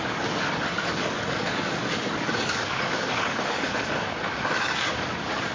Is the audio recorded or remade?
remade